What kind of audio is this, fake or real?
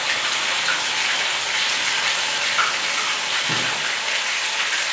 real